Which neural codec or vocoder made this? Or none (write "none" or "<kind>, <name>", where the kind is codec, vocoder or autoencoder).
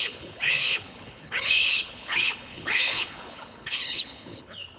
codec, HILCodec